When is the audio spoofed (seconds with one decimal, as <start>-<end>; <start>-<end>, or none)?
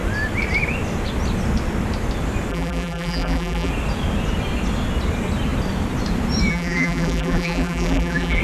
2.5-3.7; 6.5-8.4